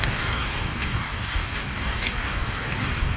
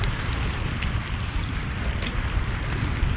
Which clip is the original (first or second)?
second